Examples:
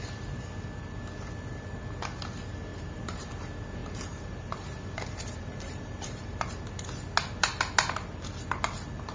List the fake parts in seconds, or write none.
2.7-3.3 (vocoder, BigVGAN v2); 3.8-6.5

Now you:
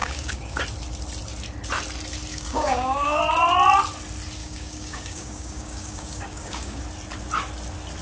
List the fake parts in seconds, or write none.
0.0-0.6 (codec, DAC); 2.3-3.2; 4.4-6.8

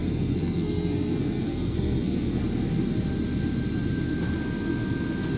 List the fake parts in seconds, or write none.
0.0-2.4 (codec, SNAC)

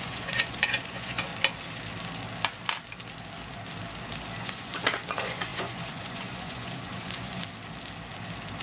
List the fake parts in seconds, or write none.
0.0-1.3 (vocoder, Vocos); 4.4-7.4

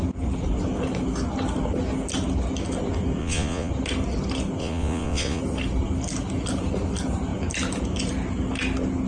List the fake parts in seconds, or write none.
3.2-3.7 (vocoder, Vocos); 4.6-5.4